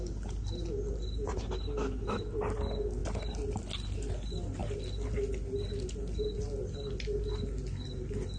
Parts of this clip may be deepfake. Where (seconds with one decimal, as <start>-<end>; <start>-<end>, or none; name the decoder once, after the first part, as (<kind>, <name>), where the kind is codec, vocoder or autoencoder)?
none